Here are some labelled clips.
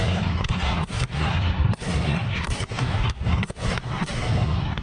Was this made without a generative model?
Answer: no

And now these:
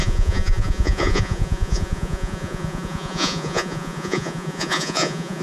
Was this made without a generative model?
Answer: no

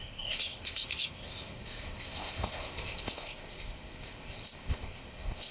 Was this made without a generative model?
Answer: no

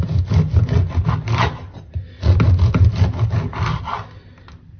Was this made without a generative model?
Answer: yes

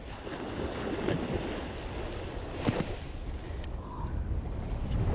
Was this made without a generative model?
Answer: yes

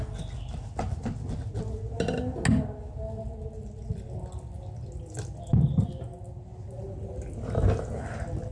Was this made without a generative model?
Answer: yes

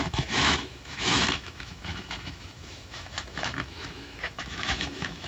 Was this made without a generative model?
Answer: no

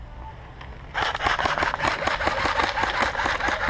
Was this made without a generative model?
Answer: yes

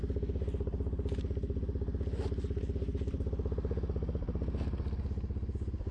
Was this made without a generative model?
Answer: yes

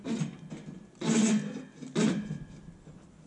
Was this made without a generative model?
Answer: yes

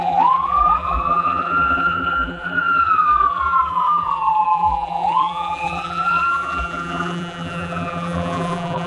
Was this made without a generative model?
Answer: no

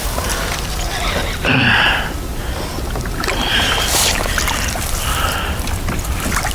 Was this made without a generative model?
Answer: no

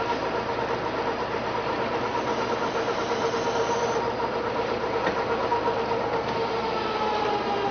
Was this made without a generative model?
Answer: yes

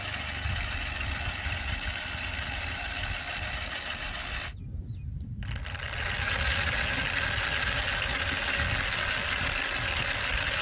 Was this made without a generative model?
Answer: yes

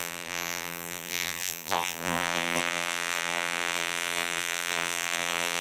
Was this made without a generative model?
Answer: no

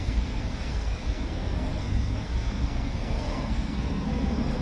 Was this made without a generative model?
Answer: no